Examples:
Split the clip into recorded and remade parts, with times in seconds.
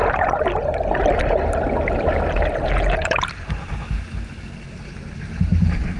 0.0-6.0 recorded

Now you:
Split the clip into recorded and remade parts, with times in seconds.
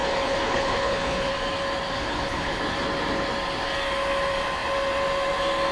0.0-1.3 remade; 1.3-1.9 recorded; 1.9-2.6 remade; 2.6-5.7 recorded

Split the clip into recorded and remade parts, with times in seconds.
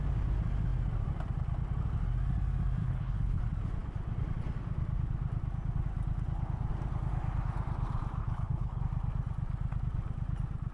0.0-2.8 recorded; 2.8-3.4 remade; 3.4-8.2 recorded; 8.2-8.8 remade; 8.8-10.7 recorded